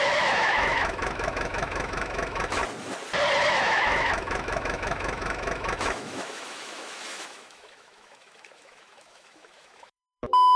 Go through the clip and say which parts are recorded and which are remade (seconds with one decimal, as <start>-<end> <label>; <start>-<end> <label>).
0.0-2.6 remade; 2.6-3.5 recorded; 3.5-10.6 remade